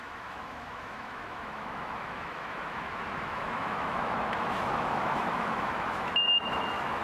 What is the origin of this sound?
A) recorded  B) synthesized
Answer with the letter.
B